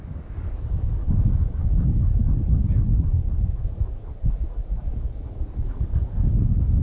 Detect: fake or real fake